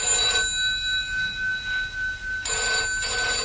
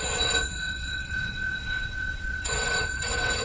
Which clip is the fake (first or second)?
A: second